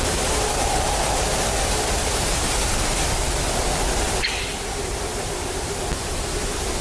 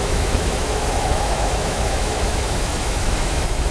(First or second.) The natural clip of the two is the first